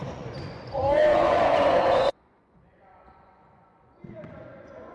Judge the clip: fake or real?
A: fake